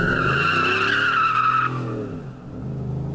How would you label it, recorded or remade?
recorded